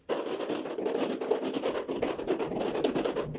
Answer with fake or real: real